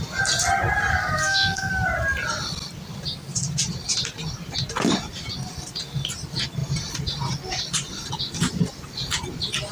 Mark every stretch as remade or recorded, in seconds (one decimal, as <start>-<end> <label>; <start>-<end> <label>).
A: 0.0-0.9 recorded; 0.9-1.7 remade; 1.7-9.7 recorded